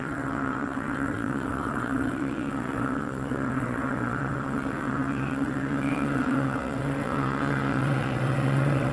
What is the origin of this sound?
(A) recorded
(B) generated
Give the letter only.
B